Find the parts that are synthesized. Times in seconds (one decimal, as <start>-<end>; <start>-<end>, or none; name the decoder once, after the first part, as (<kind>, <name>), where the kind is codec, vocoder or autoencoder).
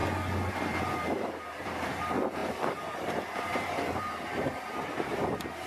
0.8-5.7 (vocoder, BigVGAN v2)